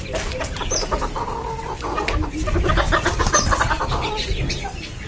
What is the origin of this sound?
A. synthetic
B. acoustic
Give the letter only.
B